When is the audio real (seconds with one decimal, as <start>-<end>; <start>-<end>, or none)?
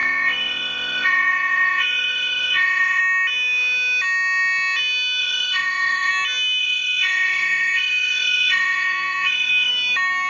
3.0-5.2; 6.1-6.6; 9.7-10.3